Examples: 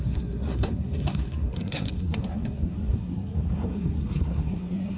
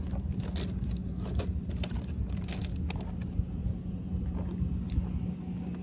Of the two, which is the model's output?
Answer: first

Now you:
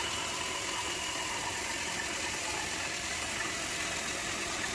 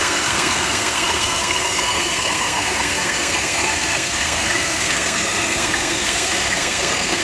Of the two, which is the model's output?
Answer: second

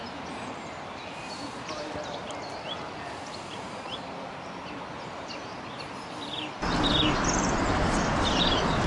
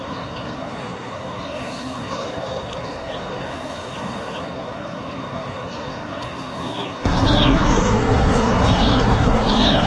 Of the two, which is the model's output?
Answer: second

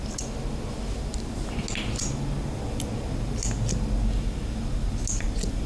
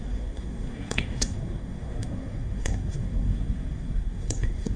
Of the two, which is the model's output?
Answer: second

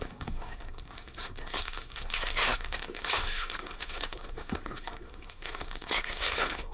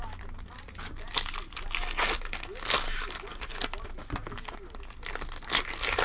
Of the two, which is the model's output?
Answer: first